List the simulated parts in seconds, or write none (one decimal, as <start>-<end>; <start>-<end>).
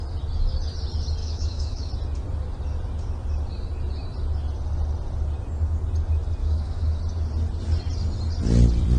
1.2-1.9; 6.4-7.0